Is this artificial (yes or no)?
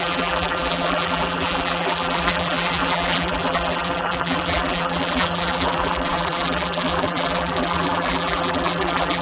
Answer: yes